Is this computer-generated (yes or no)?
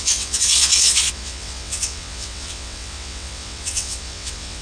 yes